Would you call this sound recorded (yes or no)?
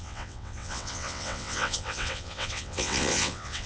no